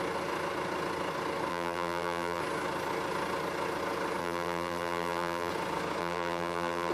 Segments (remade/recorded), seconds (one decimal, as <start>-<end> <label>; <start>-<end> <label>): 0.0-1.5 recorded; 1.5-2.4 remade; 2.4-4.2 recorded; 4.2-5.5 remade; 5.5-6.0 recorded; 6.0-6.9 remade